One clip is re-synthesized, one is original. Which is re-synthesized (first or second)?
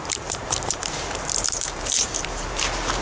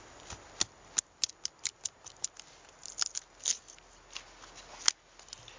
first